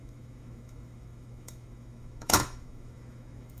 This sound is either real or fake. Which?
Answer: fake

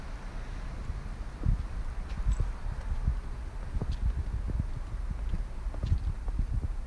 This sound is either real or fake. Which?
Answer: real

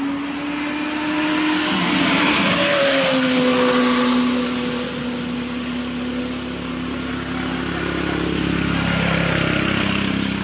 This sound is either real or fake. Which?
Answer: real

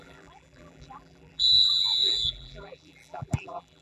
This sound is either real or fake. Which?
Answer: fake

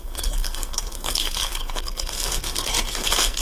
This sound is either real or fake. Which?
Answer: fake